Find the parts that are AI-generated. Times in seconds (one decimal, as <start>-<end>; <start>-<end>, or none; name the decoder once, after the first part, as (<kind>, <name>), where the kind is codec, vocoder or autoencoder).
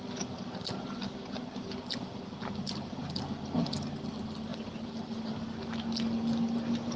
none